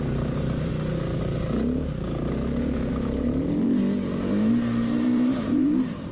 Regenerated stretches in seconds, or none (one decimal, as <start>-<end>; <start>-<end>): 0.0-0.7; 2.9-3.8; 4.5-6.1